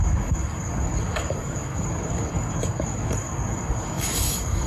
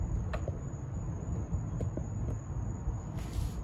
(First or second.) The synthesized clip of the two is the first